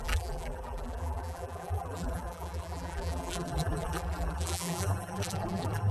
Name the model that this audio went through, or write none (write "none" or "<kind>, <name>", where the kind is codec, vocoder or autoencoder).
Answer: vocoder, BigVGAN v2